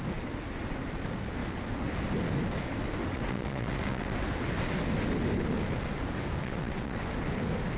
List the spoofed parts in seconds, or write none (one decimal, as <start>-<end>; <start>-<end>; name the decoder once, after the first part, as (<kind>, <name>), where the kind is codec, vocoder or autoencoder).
3.1-4.2 (vocoder, WaveNeXt); 6.4-7.0